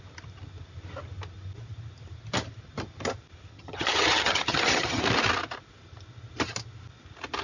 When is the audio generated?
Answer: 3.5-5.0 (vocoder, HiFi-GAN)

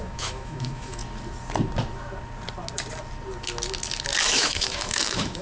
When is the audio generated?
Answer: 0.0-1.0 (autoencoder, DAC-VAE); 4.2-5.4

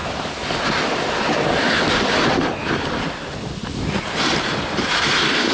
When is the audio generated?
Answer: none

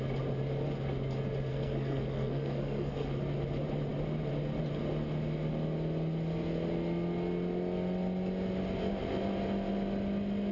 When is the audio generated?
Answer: 1.5-3.1 (codec, SNAC)

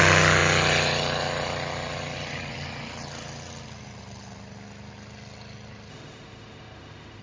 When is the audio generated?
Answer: 5.9-7.2 (autoencoder, DAC-VAE)

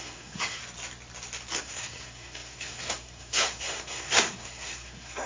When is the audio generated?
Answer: 0.0-0.6 (codec, SNAC); 1.6-5.3

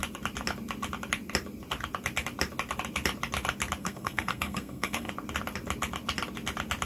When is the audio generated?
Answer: 3.8-5.1 (codec, SNAC)